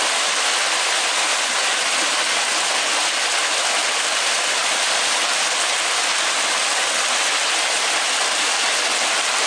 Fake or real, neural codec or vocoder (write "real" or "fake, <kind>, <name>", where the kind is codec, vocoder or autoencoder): real